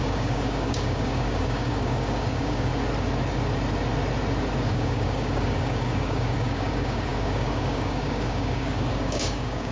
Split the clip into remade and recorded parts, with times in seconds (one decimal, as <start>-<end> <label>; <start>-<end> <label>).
0.0-2.7 remade; 2.7-4.6 recorded; 4.6-9.7 remade